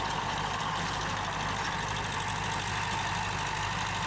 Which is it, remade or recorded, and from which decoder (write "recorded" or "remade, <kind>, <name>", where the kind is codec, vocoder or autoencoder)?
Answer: recorded